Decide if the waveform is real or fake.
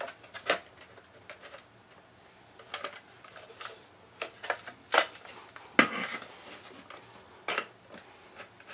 real